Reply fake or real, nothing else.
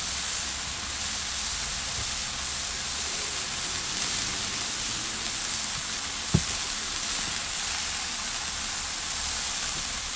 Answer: real